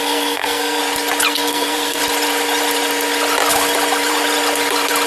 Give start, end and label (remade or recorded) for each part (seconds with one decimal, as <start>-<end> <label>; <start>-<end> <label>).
0.0-0.8 remade; 0.8-1.3 recorded; 1.3-2.0 remade; 2.0-5.1 recorded

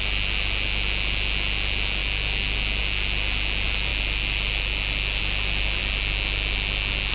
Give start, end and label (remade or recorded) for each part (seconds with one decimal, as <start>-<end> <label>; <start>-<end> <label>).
0.0-7.1 recorded